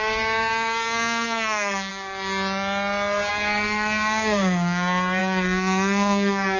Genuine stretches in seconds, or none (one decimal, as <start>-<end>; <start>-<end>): 1.9-3.3